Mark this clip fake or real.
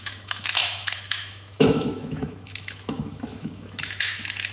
fake